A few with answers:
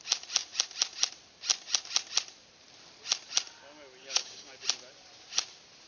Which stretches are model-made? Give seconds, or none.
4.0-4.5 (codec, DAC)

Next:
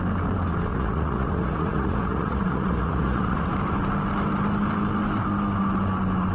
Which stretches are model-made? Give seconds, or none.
0.7-3.5 (vocoder, Vocos)

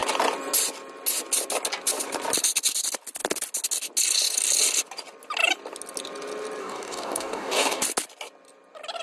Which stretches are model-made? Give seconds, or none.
6.6-7.8 (codec, DAC)

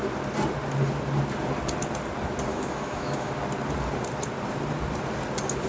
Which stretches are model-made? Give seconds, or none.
2.5-3.3 (autoencoder, DAC-VAE)